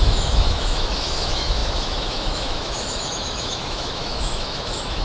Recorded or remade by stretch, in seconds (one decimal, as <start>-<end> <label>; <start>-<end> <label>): 0.0-5.0 remade